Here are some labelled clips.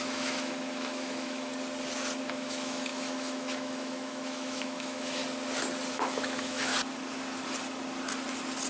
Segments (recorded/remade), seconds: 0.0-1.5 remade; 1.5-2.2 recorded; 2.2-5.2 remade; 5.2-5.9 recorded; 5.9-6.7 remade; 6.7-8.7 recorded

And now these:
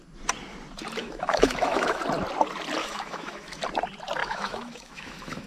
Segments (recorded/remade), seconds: 0.0-1.0 recorded; 1.0-2.0 remade; 2.0-2.8 recorded; 2.8-3.6 remade; 3.6-4.2 recorded; 4.2-5.5 remade

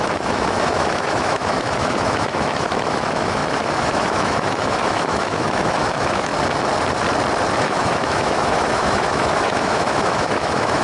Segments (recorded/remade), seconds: 0.0-6.3 remade; 6.3-7.6 recorded; 7.6-10.8 remade

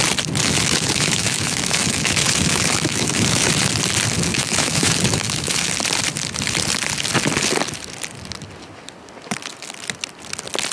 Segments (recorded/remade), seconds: 0.0-0.4 recorded; 0.4-3.5 remade; 3.5-4.3 recorded; 4.3-5.7 remade; 5.7-10.7 recorded

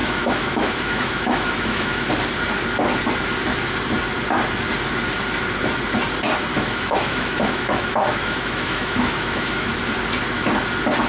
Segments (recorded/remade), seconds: 0.0-2.1 remade; 2.1-6.5 recorded; 6.5-9.7 remade; 9.7-11.1 recorded

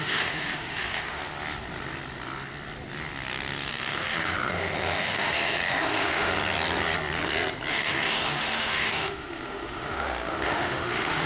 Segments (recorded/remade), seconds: 0.0-1.2 remade; 1.2-3.7 recorded; 3.7-6.3 remade; 6.3-7.7 recorded; 7.7-11.3 remade

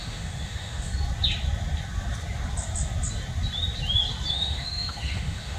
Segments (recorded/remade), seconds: 0.0-0.9 remade; 0.9-4.3 recorded; 4.3-5.6 remade

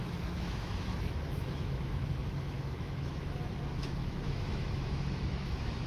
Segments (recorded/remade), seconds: 0.0-5.9 remade